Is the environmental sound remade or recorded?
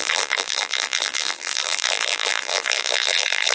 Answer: remade